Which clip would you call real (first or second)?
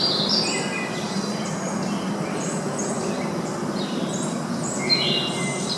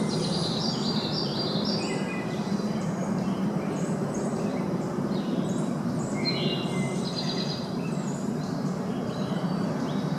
first